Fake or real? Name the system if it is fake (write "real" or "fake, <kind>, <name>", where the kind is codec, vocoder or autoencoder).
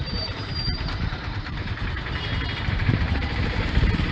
fake, vocoder, BigVGAN v2